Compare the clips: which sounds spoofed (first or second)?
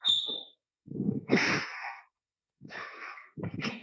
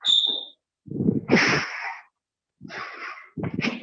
first